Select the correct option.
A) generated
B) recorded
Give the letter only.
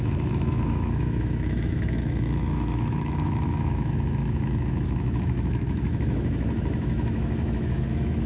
A